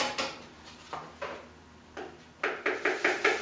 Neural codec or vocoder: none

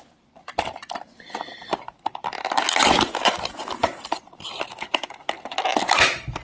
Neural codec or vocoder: none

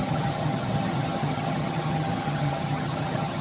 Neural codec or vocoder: vocoder, HiFi-GAN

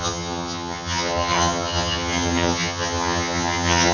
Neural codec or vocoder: vocoder, HiFi-GAN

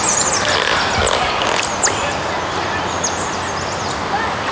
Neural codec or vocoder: none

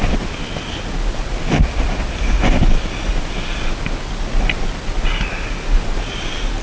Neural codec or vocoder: none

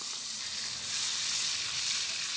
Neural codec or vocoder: none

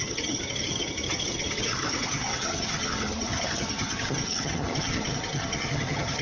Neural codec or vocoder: vocoder, HiFi-GAN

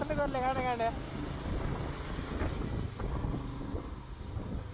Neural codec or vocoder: none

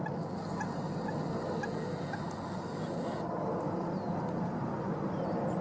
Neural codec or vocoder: none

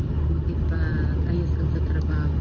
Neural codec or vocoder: none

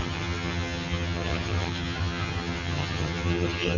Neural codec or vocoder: vocoder, HiFi-GAN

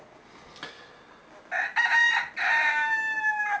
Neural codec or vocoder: none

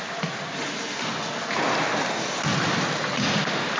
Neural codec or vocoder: none